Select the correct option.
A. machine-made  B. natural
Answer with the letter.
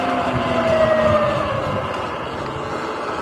B